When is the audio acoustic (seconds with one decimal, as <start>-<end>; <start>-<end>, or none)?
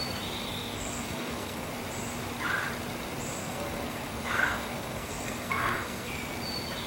0.0-0.4; 1.7-3.4; 6.1-6.9